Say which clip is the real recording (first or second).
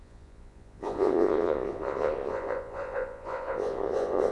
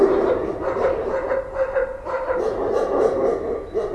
second